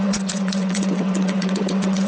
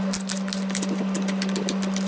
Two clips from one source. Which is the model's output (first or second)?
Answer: first